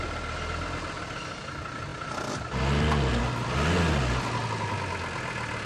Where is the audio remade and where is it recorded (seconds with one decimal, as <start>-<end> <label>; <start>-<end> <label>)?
0.0-5.7 recorded

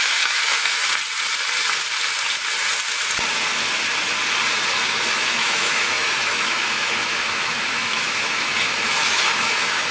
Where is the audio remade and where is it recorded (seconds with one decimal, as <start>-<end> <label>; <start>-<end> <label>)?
0.0-0.8 remade; 0.8-5.1 recorded; 5.1-9.9 remade